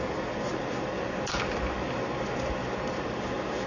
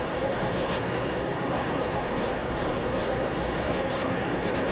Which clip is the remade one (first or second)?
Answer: second